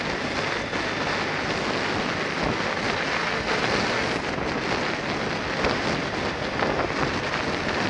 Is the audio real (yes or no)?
yes